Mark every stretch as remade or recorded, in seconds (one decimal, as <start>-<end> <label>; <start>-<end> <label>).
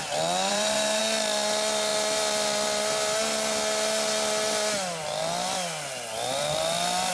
0.0-0.5 recorded; 0.5-1.0 remade; 1.0-7.1 recorded